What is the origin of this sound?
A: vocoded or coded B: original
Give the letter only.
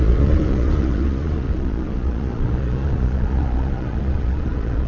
A